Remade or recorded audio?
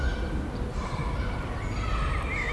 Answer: recorded